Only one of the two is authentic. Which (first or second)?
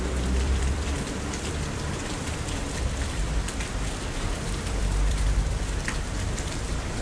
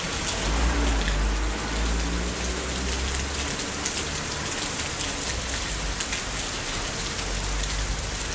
second